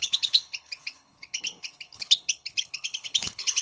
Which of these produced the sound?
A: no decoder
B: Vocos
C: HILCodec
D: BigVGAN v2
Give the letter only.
C